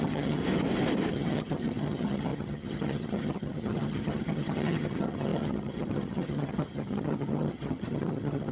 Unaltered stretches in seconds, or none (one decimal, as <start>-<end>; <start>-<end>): 0.4-1.1